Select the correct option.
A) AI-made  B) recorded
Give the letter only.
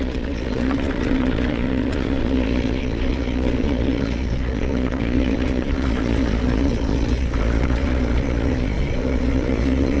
A